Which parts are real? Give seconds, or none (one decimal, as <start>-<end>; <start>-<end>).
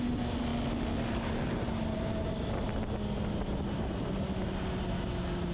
0.0-5.5